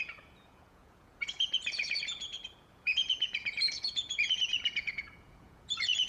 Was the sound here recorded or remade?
remade